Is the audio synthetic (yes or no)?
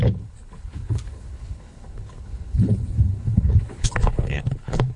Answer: yes